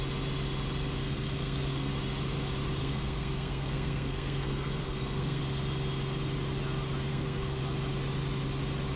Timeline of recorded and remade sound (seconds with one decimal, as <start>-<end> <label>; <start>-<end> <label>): 0.0-1.0 recorded; 1.0-1.9 remade; 1.9-2.8 recorded; 2.8-5.4 remade; 5.4-7.1 recorded; 7.1-7.6 remade; 7.6-9.0 recorded